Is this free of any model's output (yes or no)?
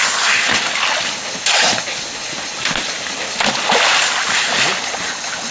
yes